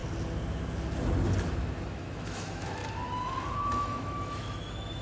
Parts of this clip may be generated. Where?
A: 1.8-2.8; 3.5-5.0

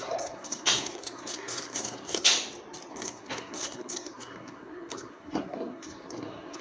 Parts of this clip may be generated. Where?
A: 0.0-2.3; 2.9-6.6

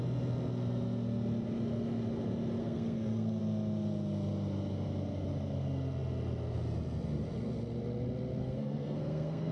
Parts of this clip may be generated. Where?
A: 2.6-3.4; 8.4-9.5

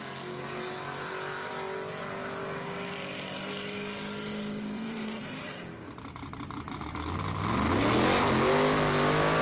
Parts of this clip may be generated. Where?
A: 4.3-6.7

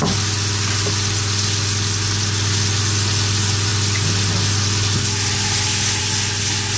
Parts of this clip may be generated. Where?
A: none

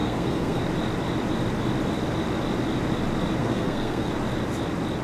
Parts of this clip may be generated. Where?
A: 0.0-0.6; 3.4-4.1

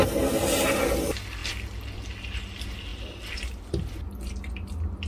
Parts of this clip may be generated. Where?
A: none

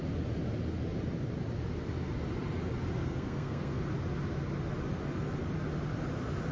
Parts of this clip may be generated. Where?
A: 3.0-3.8